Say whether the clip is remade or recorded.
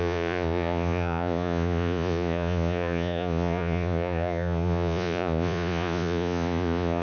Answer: remade